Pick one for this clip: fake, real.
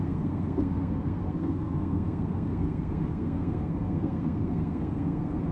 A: fake